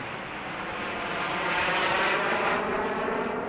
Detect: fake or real real